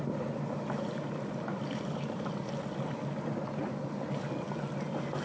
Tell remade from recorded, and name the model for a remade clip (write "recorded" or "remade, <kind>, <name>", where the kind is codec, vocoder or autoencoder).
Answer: recorded